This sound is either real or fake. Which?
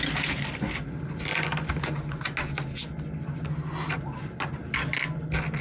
real